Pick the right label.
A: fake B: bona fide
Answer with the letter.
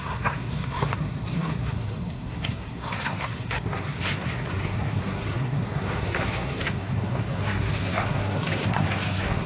A